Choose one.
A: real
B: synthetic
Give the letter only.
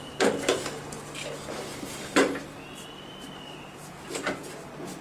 A